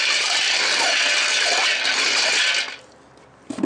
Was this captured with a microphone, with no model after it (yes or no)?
yes